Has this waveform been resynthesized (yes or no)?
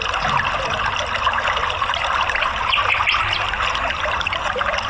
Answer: no